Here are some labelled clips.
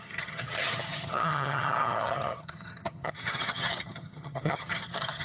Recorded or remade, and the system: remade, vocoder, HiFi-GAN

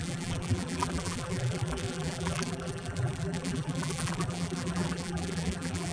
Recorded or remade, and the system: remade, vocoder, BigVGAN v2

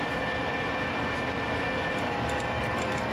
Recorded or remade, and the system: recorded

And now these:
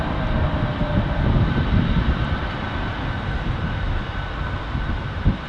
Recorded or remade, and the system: recorded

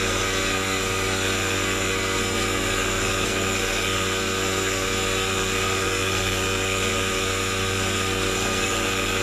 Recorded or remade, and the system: remade, codec, SNAC